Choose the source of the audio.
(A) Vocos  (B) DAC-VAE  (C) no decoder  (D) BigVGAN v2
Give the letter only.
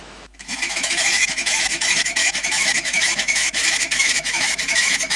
B